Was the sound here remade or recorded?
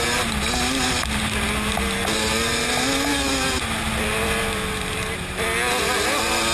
recorded